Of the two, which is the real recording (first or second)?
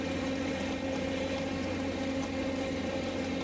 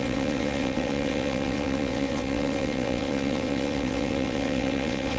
first